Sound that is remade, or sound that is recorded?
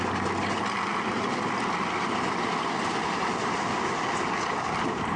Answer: recorded